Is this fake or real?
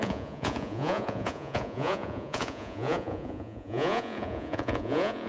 fake